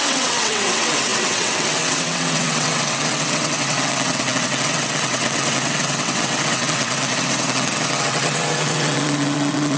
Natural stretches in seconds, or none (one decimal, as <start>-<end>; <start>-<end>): none